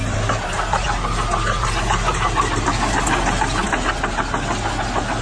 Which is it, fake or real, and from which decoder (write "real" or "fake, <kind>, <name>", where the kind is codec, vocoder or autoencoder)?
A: real